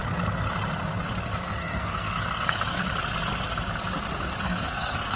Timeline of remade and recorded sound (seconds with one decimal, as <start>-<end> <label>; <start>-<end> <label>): 0.0-1.2 recorded; 1.2-2.8 remade; 2.8-4.4 recorded; 4.4-5.2 remade